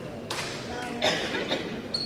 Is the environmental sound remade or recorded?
recorded